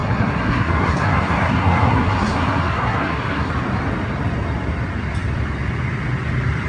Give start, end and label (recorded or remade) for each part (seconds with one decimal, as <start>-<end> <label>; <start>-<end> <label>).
0.0-3.5 remade; 3.5-6.7 recorded